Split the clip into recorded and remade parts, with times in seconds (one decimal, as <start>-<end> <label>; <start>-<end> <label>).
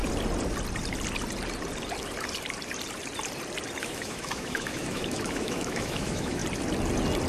0.0-3.8 recorded; 3.8-6.4 remade; 6.4-7.3 recorded